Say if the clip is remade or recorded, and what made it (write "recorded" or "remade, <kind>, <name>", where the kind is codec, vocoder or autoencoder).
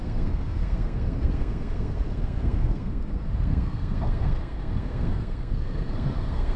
remade, codec, SNAC